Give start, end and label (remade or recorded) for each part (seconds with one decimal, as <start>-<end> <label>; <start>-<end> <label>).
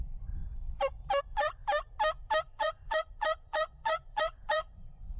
0.0-0.4 remade; 0.4-1.2 recorded; 1.2-1.6 remade; 1.6-2.5 recorded; 2.5-5.2 remade